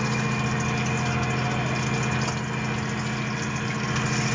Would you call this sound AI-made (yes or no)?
no